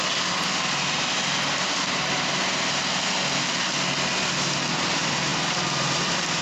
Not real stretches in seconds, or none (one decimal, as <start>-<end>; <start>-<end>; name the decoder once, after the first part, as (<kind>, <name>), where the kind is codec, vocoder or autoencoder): none